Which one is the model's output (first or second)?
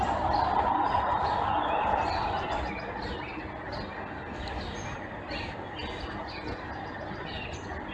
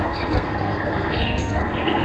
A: second